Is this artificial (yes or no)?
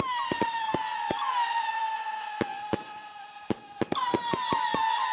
no